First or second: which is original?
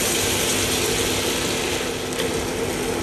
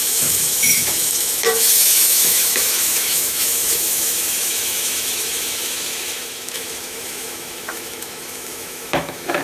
first